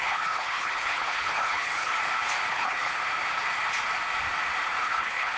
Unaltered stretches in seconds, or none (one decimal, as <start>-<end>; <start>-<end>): 1.9-2.5; 2.9-4.8